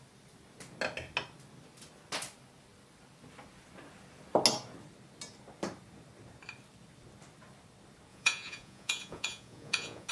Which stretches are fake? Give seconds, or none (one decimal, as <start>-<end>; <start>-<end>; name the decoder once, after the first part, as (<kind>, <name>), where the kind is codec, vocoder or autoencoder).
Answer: 8.1-10.1 (vocoder, Vocos)